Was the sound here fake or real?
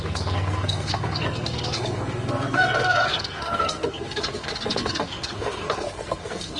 fake